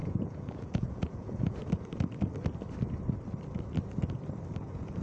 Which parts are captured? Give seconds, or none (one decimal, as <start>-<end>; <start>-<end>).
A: 1.6-4.6